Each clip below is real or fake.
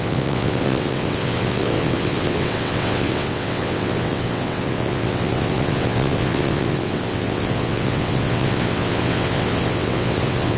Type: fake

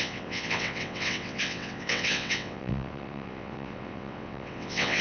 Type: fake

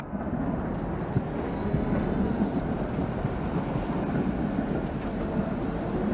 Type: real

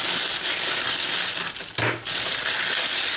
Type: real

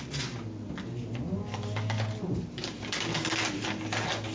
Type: real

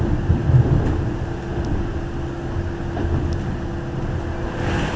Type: real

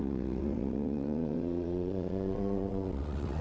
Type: fake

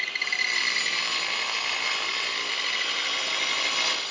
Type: real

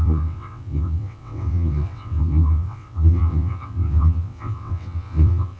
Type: fake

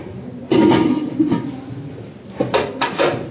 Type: real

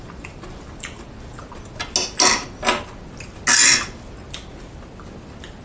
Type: real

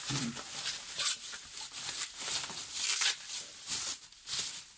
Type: real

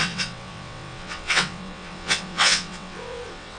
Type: fake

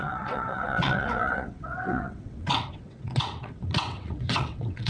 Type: fake